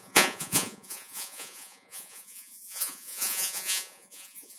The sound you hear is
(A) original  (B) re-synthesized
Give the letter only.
B